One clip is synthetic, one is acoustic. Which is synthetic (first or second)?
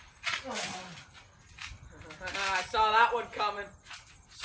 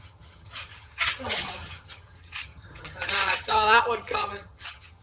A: second